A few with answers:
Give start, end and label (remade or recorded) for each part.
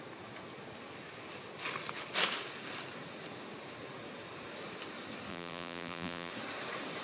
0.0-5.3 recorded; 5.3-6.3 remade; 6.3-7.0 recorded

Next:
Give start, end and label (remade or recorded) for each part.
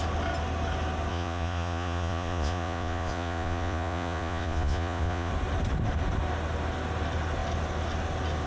0.0-1.1 recorded; 1.1-5.3 remade; 5.3-8.5 recorded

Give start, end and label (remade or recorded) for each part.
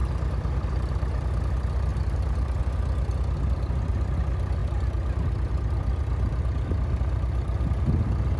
0.0-1.9 recorded; 1.9-2.6 remade; 2.6-8.4 recorded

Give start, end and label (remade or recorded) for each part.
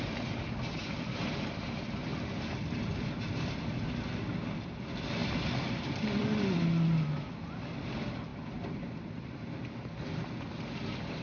0.0-11.2 recorded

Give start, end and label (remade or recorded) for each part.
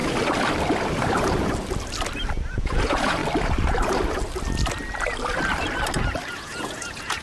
0.0-2.6 recorded; 2.6-3.2 remade; 3.2-6.3 recorded; 6.3-7.2 remade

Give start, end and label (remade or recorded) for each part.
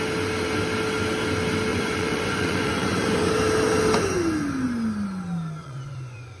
0.0-1.7 recorded; 1.7-3.3 remade; 3.3-5.6 recorded; 5.6-6.4 remade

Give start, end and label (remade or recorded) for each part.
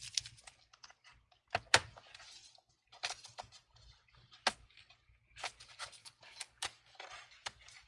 0.0-6.0 recorded; 6.0-7.0 remade; 7.0-7.9 recorded